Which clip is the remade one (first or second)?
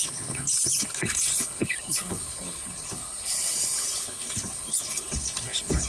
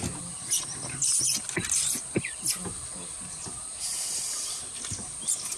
first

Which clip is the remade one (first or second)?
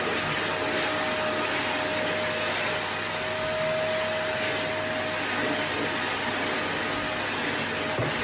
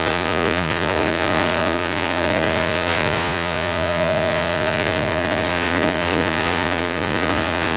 second